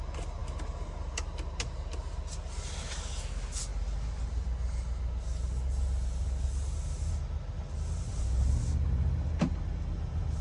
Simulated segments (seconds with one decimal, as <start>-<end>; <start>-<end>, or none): none